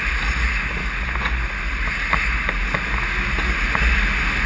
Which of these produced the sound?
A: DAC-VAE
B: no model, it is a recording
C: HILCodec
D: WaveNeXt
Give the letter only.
B